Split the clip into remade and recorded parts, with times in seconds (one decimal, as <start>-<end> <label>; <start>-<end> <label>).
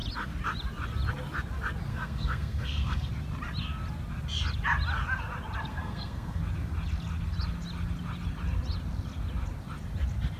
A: 0.0-1.9 recorded; 1.9-3.1 remade; 3.1-5.7 recorded; 5.7-6.4 remade; 6.4-10.4 recorded